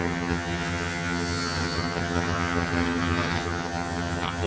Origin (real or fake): fake